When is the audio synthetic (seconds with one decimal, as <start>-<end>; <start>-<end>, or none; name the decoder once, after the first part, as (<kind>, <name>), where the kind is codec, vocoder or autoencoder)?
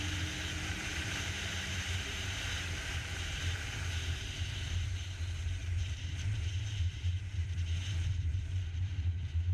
0.0-9.5 (vocoder, BigVGAN v2)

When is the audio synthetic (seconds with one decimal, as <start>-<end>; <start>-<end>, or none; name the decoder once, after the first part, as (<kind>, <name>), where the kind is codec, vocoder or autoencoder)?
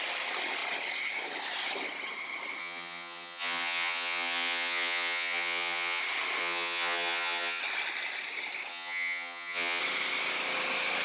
2.6-6.0 (vocoder, HiFi-GAN); 6.4-7.6; 8.7-9.8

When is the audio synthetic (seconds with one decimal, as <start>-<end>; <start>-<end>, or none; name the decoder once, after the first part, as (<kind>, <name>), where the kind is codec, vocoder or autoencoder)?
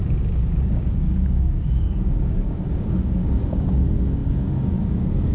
0.0-5.3 (codec, DAC)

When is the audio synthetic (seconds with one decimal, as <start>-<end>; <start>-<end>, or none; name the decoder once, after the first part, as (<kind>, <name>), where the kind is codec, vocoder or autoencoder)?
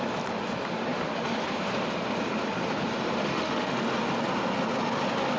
3.2-3.8 (autoencoder, DAC-VAE)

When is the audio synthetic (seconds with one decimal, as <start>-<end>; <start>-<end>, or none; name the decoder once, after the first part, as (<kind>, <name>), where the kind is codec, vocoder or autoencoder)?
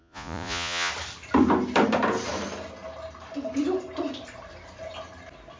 0.0-0.9 (vocoder, Vocos)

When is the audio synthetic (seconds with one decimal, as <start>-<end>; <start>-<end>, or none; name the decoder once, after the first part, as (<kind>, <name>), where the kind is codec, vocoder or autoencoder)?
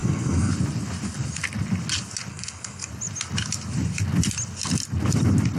0.0-0.5 (codec, SNAC); 2.3-2.9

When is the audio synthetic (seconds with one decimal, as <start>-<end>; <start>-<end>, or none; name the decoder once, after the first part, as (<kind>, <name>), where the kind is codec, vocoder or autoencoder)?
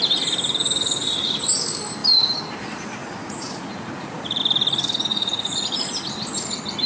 3.0-4.4 (vocoder, Vocos); 5.1-5.9